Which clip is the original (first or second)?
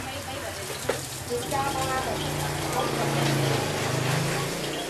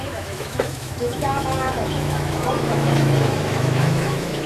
first